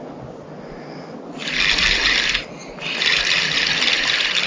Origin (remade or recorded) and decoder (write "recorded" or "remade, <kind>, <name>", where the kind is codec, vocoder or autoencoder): recorded